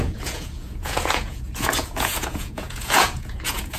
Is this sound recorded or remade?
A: remade